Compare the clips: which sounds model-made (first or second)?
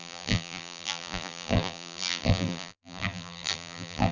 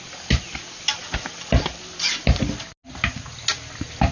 first